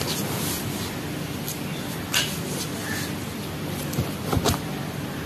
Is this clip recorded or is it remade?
recorded